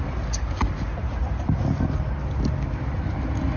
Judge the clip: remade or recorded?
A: recorded